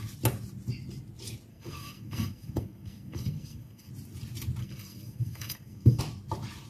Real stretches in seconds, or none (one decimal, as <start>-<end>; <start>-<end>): 0.0-1.5; 3.9-4.6; 6.0-6.7